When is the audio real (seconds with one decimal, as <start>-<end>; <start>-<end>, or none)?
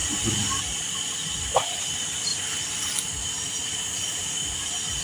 0.0-5.0